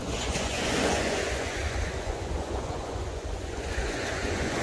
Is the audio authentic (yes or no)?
no